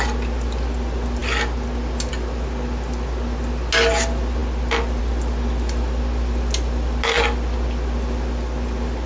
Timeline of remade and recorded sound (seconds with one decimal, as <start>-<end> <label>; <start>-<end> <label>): 0.0-9.1 recorded